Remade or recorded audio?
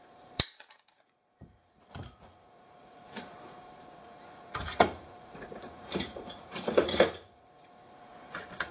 remade